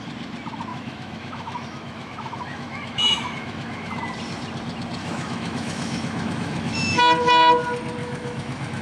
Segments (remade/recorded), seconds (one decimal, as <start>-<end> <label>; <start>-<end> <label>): 0.0-0.7 recorded; 0.7-4.0 remade; 4.0-5.0 recorded; 5.0-7.0 remade; 7.0-8.0 recorded; 8.0-8.8 remade